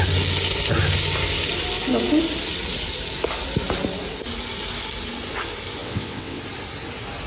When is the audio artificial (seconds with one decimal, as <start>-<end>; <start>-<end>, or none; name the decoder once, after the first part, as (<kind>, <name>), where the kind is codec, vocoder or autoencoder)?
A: 5.8-6.4 (vocoder, WaveNeXt)